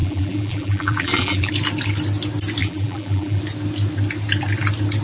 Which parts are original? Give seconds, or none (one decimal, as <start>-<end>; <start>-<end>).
1.5-2.6; 3.4-5.0

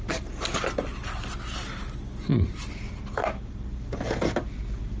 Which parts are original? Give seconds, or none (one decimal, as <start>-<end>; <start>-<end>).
0.0-2.3; 4.0-5.0

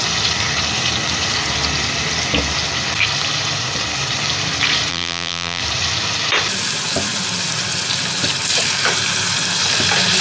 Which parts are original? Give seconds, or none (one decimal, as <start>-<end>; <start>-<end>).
0.0-4.9; 5.6-10.2

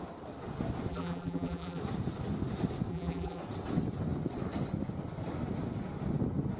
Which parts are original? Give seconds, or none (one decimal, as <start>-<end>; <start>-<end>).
0.0-0.9; 1.8-2.9; 3.4-6.6

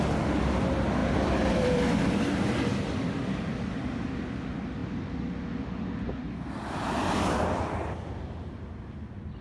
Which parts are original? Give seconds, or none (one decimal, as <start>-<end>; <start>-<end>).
0.0-1.0; 3.5-9.4

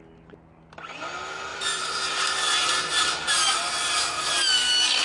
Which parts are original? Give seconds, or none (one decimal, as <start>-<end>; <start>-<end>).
0.0-1.5; 4.3-5.0

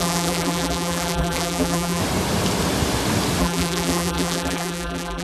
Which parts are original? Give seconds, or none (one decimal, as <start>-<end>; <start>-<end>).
2.0-3.4